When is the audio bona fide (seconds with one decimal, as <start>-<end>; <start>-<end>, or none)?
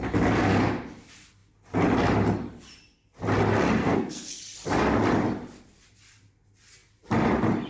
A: 0.0-3.8; 4.4-7.7